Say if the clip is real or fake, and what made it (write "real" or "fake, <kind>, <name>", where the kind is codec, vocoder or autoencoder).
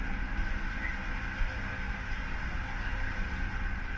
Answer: real